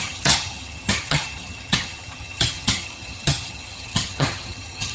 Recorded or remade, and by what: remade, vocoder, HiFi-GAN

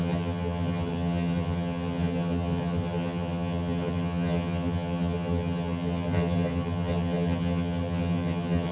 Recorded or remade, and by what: remade, vocoder, HiFi-GAN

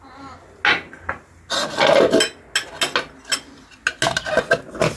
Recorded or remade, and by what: recorded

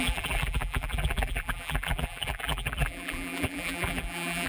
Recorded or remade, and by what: remade, vocoder, BigVGAN v2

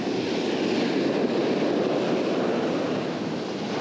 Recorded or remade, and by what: recorded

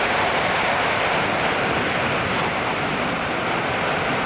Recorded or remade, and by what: remade, vocoder, BigVGAN v2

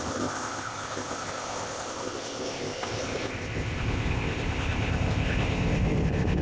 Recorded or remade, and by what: remade, codec, ZipCodec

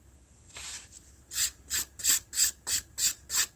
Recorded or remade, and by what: recorded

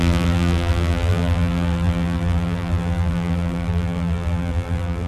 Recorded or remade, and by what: remade, vocoder, BigVGAN v2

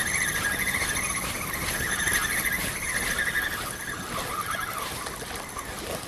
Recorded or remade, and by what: recorded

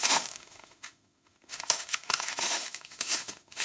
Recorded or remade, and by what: remade, autoencoder, DAC-VAE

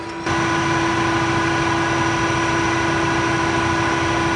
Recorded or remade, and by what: recorded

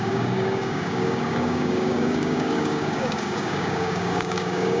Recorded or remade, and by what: remade, codec, DAC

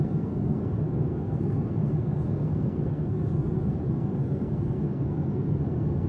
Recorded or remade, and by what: remade, codec, SNAC